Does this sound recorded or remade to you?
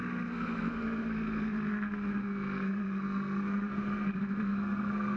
remade